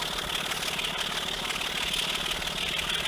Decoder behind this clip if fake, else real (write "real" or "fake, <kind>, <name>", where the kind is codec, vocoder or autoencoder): real